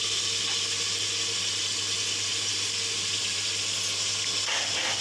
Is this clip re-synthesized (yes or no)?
no